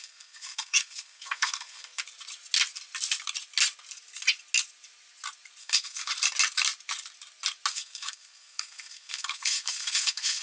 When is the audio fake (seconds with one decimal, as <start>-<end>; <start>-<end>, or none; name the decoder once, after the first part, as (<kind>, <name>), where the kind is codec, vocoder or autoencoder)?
0.0-2.0 (codec, SNAC); 5.6-6.1; 7.7-10.4

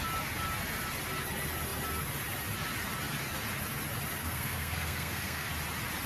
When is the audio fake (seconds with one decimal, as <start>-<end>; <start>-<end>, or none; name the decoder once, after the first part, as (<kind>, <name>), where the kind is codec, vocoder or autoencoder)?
4.2-5.5 (codec, SNAC)

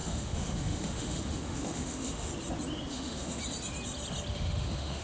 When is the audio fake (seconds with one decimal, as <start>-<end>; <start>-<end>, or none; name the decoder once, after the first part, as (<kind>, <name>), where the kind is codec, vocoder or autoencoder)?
0.0-2.3 (autoencoder, DAC-VAE); 2.9-3.4; 4.3-5.0

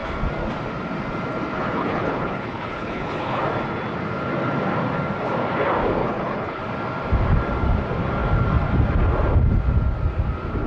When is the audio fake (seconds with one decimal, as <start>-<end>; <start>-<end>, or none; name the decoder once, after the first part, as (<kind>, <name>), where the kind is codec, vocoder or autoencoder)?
1.6-3.4 (codec, HILCodec); 6.0-6.6

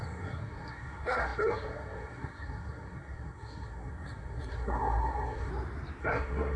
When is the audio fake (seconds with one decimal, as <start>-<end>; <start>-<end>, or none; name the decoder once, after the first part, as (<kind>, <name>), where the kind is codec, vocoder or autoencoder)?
0.0-5.5 (codec, SNAC); 6.0-6.6

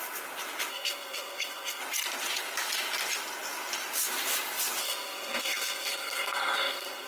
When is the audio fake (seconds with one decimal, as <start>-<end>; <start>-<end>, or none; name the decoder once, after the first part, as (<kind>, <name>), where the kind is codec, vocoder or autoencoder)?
0.7-1.8 (codec, SNAC); 4.8-7.1

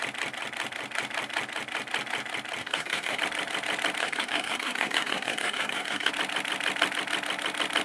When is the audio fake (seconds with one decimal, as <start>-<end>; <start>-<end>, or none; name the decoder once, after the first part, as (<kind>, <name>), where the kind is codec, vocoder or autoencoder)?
2.6-3.2 (codec, SNAC); 4.0-6.1

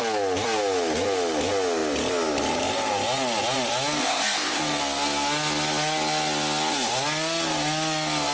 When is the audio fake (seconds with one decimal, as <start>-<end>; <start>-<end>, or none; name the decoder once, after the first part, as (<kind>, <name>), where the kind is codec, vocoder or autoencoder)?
4.0-4.6 (codec, ZipCodec)